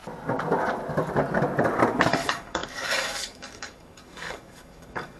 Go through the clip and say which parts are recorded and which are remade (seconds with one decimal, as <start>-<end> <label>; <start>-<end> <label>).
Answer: 0.0-2.1 recorded; 2.1-5.2 remade